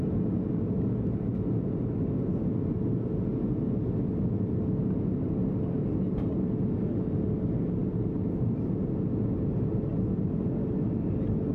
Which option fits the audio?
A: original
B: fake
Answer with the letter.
A